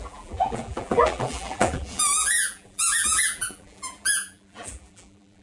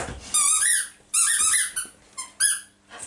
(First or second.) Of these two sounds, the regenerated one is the first